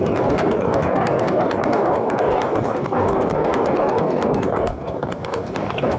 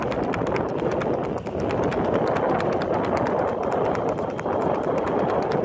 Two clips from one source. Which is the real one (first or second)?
second